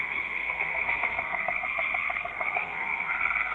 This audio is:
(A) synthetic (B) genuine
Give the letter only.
A